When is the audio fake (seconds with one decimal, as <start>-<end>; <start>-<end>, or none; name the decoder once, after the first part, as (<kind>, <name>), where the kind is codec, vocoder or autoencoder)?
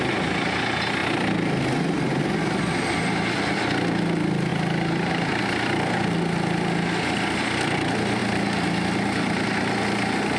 none